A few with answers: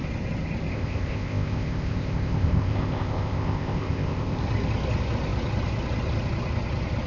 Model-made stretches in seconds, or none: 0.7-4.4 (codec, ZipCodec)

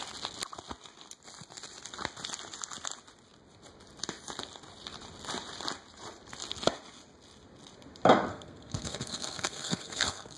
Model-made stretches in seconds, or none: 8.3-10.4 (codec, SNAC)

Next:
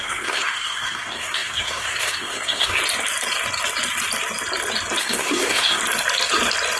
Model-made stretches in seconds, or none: 0.0-2.8 (codec, SNAC); 5.0-5.8

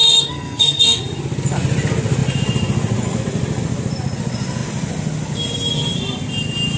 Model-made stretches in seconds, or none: 0.0-1.0 (codec, SNAC)